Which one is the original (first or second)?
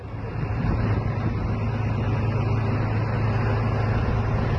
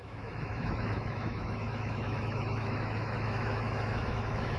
first